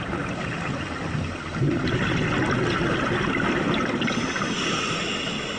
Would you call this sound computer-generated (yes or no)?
no